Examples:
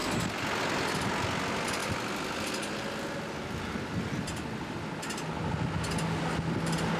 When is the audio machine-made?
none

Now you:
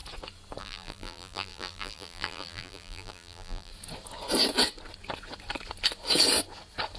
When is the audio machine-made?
0.6-3.7

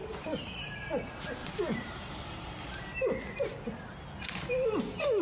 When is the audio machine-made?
0.0-0.5; 1.4-2.8

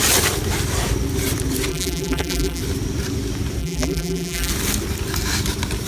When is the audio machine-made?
1.7-2.6; 3.6-4.5

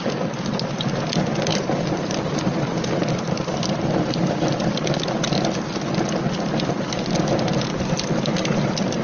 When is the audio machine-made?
1.5-4.0

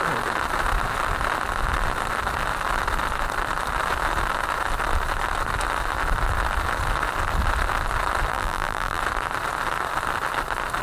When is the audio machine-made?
8.3-9.0